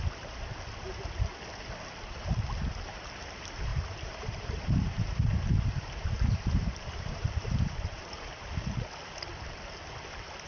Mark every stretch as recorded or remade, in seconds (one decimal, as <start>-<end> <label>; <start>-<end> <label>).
0.0-3.7 recorded; 3.7-8.5 remade; 8.5-10.5 recorded